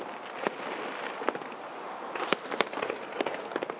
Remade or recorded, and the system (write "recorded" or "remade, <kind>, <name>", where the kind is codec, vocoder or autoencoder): recorded